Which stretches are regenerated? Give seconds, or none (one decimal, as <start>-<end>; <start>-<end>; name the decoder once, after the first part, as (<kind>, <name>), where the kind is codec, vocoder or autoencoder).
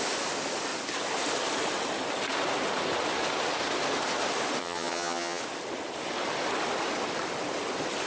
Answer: 4.6-5.4 (vocoder, HiFi-GAN)